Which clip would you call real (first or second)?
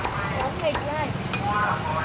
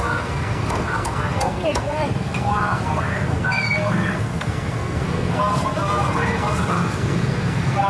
first